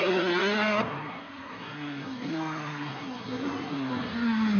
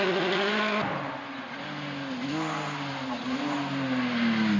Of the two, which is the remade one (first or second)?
first